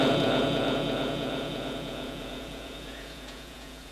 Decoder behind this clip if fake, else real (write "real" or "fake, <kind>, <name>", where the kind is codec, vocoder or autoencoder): fake, vocoder, Vocos